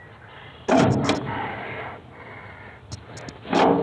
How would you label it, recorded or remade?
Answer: recorded